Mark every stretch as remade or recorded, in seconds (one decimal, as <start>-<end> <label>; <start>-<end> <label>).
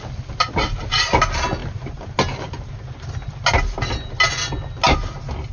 0.0-5.5 recorded